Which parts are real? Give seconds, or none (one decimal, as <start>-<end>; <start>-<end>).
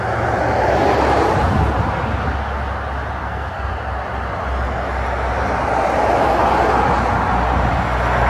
0.0-3.2; 3.7-8.3